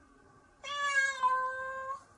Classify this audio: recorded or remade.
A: recorded